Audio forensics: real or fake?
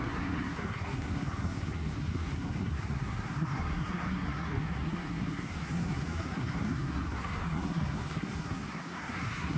fake